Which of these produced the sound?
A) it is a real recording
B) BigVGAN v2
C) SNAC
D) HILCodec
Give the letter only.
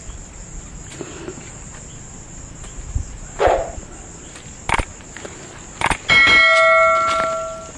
A